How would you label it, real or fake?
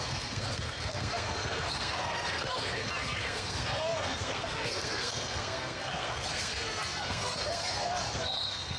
fake